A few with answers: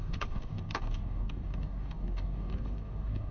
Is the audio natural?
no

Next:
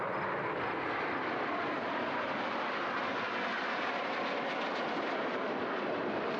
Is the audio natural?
yes